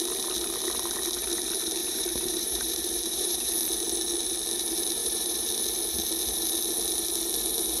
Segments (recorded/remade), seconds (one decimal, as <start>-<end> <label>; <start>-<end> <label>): 0.0-1.8 recorded; 1.8-3.5 remade; 3.5-5.0 recorded; 5.0-5.5 remade; 5.5-7.8 recorded